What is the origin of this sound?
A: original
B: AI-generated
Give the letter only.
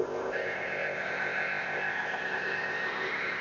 B